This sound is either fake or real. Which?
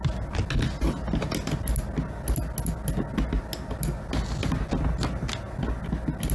real